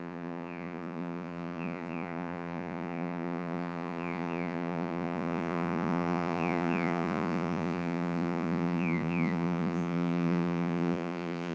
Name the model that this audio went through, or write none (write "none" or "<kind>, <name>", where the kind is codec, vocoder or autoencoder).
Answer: vocoder, Vocos